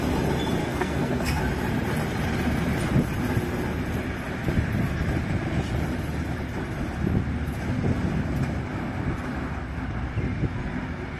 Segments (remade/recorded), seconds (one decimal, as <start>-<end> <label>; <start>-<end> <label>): 0.0-0.6 recorded; 0.6-1.4 remade; 1.4-11.2 recorded